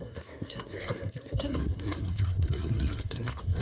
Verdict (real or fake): fake